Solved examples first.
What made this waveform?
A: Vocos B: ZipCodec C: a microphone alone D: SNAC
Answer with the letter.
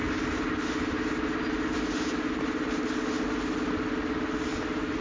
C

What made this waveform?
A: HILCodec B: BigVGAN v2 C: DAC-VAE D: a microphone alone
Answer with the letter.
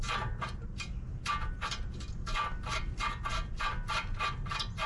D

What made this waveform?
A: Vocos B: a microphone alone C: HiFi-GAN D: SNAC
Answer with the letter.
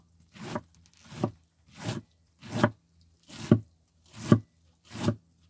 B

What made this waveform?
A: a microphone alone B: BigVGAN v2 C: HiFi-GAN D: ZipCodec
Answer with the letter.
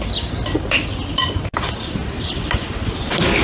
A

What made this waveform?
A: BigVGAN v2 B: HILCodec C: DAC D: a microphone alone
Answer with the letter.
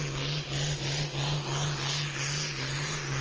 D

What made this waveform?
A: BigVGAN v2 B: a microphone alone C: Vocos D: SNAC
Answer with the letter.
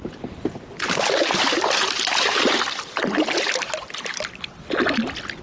B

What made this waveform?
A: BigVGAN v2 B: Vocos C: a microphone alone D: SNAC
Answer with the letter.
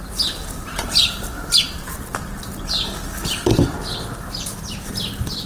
C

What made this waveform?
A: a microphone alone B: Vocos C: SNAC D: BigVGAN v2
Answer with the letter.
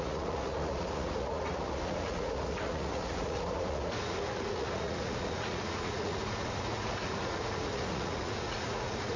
B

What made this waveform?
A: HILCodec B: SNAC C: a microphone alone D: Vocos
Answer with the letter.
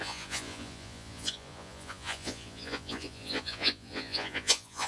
D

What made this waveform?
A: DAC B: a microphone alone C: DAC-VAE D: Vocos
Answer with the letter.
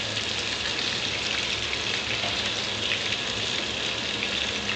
B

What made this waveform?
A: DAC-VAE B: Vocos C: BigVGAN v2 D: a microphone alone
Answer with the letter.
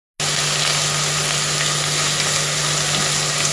D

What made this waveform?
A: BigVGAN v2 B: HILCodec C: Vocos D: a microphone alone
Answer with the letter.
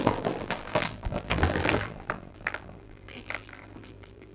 A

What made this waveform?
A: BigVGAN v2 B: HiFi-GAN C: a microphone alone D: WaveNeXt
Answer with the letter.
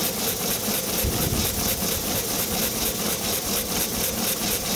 C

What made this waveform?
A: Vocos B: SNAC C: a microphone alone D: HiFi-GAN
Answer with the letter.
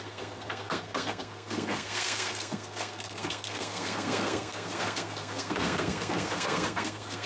B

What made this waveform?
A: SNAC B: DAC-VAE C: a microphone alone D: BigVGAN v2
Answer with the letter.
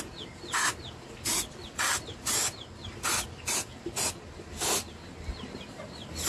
C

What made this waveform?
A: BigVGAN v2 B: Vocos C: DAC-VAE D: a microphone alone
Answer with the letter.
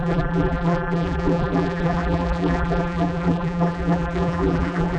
A